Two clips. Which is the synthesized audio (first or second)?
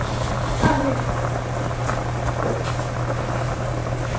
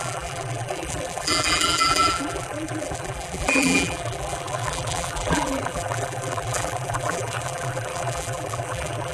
second